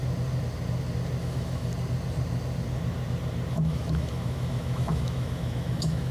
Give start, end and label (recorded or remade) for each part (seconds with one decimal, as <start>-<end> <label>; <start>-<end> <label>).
0.0-1.2 recorded; 1.2-1.7 remade; 1.7-3.5 recorded; 3.5-6.1 remade